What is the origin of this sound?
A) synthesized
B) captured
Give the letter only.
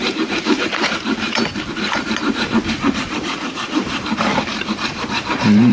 A